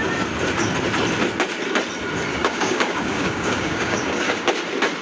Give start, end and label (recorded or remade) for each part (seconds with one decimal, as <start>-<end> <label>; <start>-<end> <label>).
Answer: 0.0-2.3 recorded; 2.3-4.5 remade; 4.5-5.0 recorded